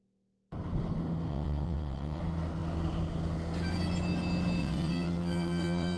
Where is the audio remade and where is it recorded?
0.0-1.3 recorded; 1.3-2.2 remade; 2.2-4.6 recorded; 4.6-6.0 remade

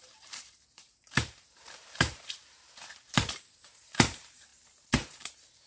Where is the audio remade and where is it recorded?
0.0-4.5 remade; 4.5-5.1 recorded; 5.1-5.7 remade

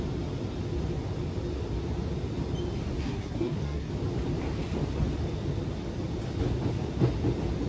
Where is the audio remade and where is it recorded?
0.0-3.0 recorded; 3.0-3.9 remade; 3.9-7.7 recorded